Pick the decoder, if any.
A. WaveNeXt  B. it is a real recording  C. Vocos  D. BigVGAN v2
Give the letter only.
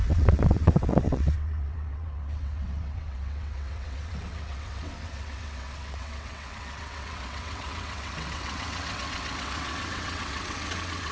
A